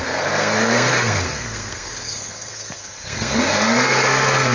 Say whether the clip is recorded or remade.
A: remade